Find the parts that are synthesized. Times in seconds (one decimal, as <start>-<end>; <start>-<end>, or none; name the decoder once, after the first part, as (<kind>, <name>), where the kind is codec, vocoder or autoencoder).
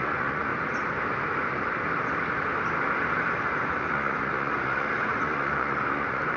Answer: 0.0-0.5 (vocoder, Vocos); 3.8-6.4